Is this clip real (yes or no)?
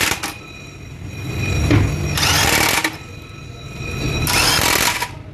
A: yes